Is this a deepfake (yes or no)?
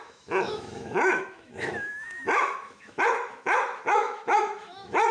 yes